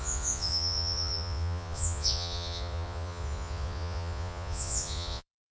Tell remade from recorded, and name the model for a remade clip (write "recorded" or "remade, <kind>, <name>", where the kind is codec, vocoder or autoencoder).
remade, vocoder, Vocos